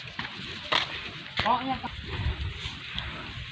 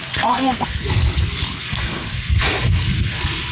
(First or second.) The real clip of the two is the first